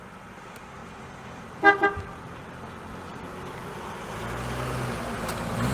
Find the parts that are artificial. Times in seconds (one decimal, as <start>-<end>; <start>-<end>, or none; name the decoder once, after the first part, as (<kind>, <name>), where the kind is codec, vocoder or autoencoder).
0.8-2.4 (vocoder, BigVGAN v2); 3.1-4.0